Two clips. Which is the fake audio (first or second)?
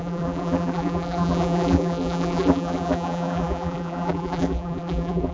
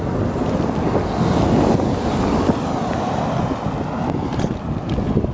first